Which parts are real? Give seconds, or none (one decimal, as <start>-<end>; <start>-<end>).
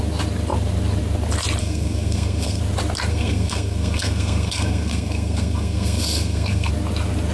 0.0-1.6; 2.6-3.1; 6.7-7.3